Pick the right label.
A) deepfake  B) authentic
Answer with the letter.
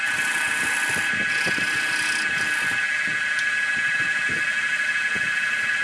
B